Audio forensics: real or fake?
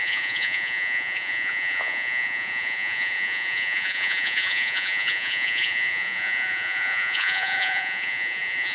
fake